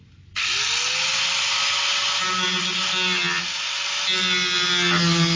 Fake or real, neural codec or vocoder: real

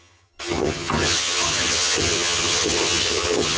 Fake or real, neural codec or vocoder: fake, vocoder, HiFi-GAN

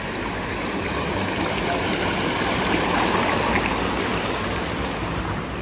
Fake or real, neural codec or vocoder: real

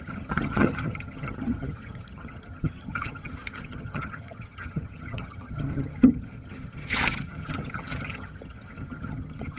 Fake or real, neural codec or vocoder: fake, vocoder, HiFi-GAN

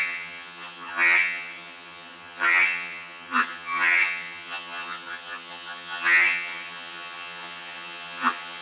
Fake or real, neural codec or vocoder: fake, vocoder, HiFi-GAN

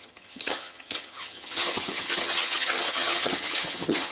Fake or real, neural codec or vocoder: fake, vocoder, HiFi-GAN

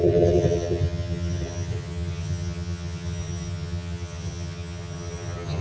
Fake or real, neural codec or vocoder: fake, vocoder, HiFi-GAN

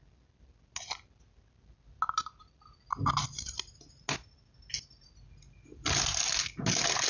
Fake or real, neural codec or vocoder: real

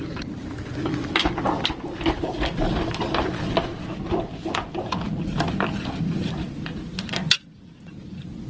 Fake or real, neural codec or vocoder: real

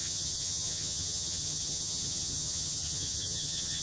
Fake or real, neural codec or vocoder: fake, vocoder, HiFi-GAN